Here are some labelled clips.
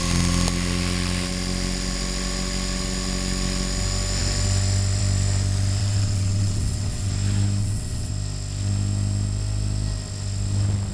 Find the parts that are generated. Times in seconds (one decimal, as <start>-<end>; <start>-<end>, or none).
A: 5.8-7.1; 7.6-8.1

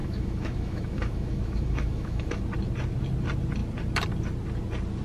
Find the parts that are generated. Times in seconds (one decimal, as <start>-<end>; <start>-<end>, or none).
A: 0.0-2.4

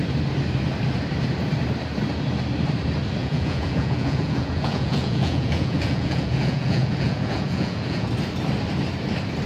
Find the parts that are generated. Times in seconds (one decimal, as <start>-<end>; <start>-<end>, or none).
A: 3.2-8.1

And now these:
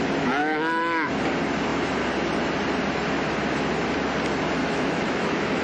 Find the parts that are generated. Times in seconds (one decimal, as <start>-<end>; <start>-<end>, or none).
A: 0.4-1.1; 4.6-5.6

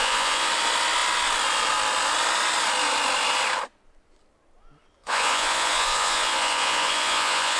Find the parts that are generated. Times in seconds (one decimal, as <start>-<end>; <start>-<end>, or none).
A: 0.0-0.5; 5.0-7.6

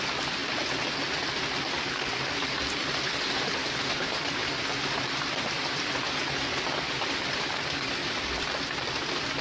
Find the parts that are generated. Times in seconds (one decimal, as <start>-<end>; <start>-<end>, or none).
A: 2.8-6.0

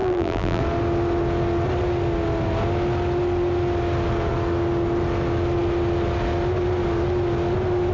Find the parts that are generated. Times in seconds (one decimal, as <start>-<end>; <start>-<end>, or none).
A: 0.0-0.6

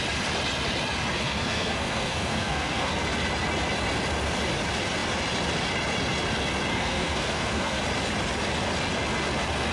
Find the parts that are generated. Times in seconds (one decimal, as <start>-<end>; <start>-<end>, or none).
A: 1.1-2.9; 6.7-7.8